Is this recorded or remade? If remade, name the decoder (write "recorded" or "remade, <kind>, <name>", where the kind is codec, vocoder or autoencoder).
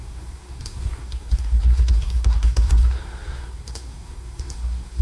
remade, codec, SNAC